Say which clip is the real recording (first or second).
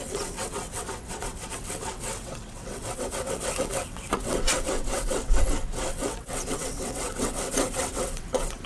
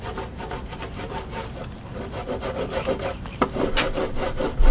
second